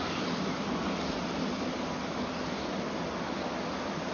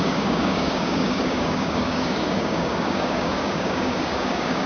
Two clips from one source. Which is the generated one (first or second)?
second